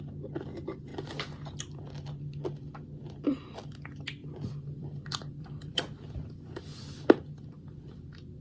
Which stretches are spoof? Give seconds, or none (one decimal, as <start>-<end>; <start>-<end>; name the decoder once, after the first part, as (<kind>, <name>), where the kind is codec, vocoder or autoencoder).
4.2-5.8 (vocoder, BigVGAN v2)